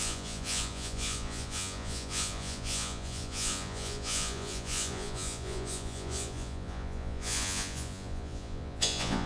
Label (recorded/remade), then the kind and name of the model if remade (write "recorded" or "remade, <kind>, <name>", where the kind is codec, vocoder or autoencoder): remade, vocoder, Vocos